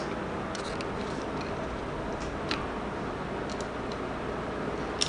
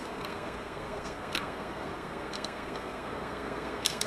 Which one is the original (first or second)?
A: first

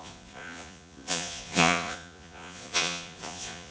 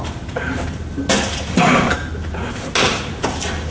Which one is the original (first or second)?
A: second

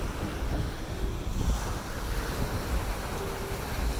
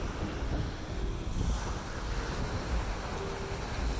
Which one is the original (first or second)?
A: second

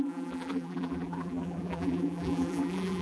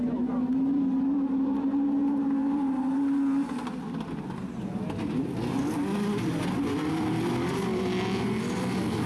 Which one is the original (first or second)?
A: second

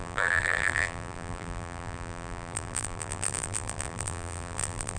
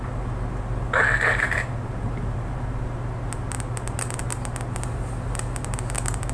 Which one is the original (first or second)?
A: second